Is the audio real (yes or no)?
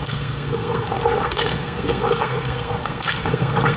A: no